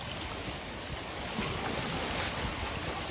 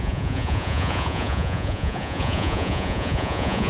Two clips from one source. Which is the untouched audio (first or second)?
first